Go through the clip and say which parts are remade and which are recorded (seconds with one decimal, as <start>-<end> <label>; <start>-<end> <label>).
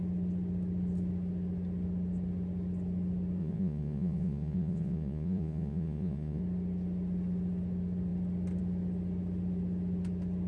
0.0-3.4 recorded; 3.4-6.4 remade; 6.4-10.5 recorded